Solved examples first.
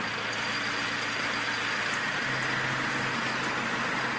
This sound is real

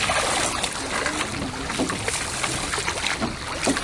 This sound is real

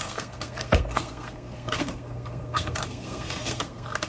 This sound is fake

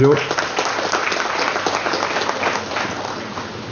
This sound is real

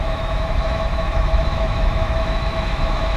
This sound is fake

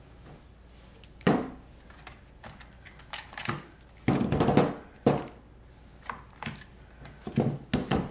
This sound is real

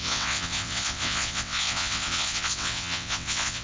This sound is fake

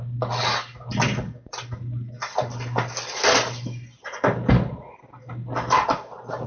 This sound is real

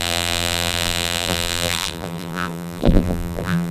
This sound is fake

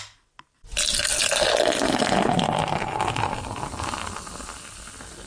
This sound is real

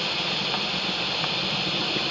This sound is real